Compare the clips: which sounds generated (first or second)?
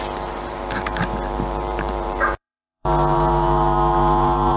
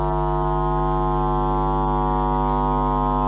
first